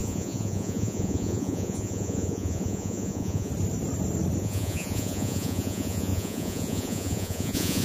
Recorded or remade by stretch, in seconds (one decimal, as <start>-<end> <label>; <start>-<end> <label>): 0.0-3.5 remade; 3.5-4.4 recorded; 4.4-7.8 remade

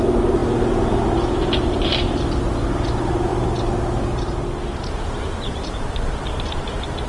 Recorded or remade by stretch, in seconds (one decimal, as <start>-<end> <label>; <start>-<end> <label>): 0.0-7.1 recorded

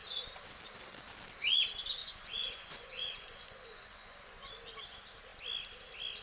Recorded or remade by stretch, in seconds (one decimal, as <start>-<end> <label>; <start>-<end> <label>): 0.0-2.0 recorded; 2.0-4.5 remade; 4.5-6.2 recorded

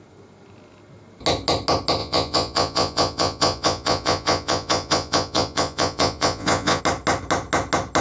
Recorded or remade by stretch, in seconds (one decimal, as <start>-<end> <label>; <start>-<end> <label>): 0.0-2.0 recorded; 2.0-6.8 remade; 6.8-8.0 recorded

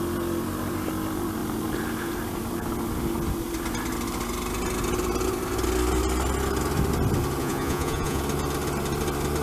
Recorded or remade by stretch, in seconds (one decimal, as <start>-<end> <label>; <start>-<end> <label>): 0.0-7.4 recorded; 7.4-8.2 remade; 8.2-9.4 recorded

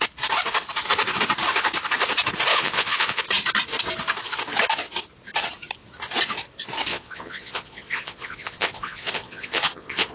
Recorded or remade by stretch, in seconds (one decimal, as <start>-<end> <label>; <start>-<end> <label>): 0.0-2.5 recorded; 2.5-3.2 remade; 3.2-6.9 recorded; 6.9-10.1 remade